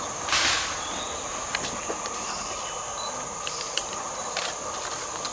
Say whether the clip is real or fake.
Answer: real